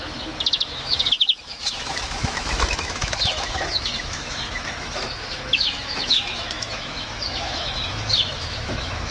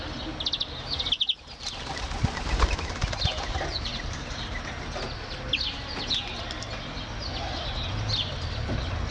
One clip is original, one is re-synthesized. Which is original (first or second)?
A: second